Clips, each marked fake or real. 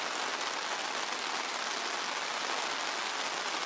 real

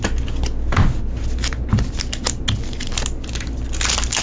real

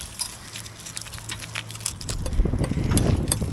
real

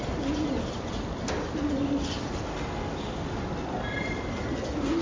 real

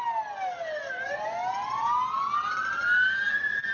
real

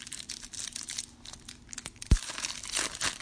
real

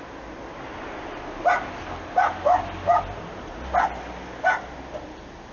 real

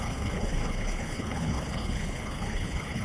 fake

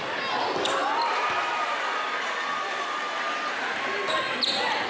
real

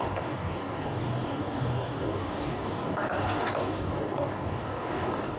fake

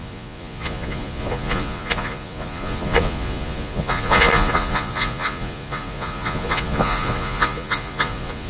fake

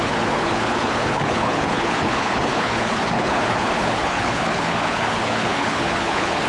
fake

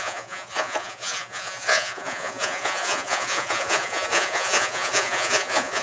fake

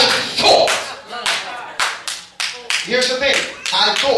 real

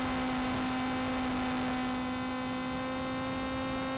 real